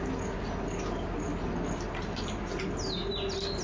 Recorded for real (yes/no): yes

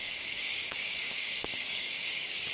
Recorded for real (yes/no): no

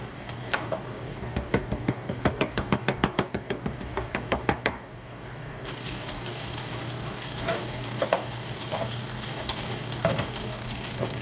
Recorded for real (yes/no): no